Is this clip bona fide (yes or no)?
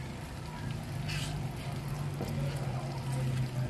yes